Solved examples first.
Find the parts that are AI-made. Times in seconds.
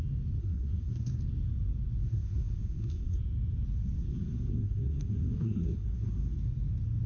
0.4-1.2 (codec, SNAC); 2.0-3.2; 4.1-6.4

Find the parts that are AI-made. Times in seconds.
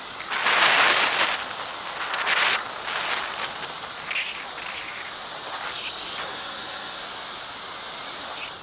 6.2-7.0 (codec, SNAC)